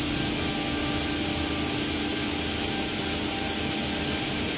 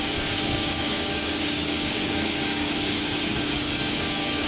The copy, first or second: second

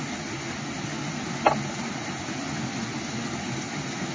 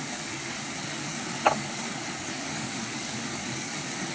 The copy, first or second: second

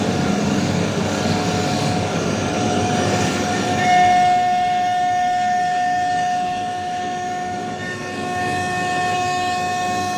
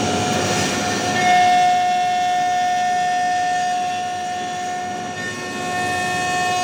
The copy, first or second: first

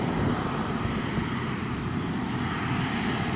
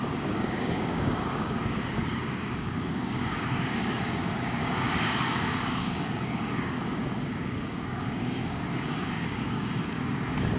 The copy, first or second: second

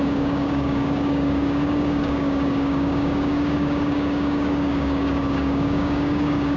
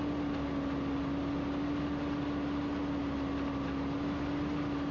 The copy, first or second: first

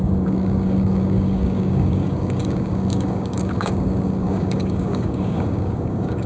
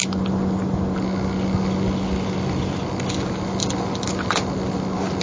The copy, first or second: first